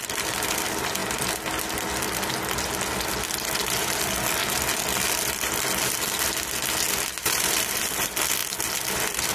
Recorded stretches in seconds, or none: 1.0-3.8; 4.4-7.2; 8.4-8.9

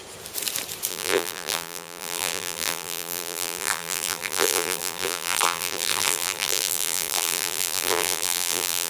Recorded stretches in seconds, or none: 0.0-0.9

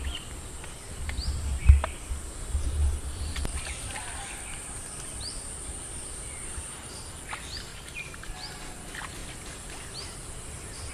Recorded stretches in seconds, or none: 0.0-2.8; 7.1-7.7; 8.5-10.9

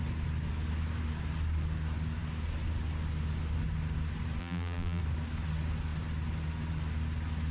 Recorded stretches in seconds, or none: 0.0-4.4; 5.0-7.5

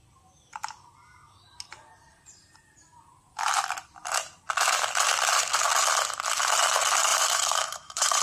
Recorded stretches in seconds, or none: 0.0-7.1

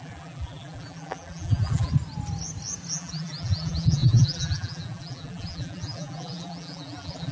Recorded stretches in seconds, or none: 1.9-2.9

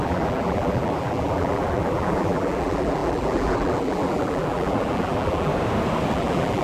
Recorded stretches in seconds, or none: 5.5-6.1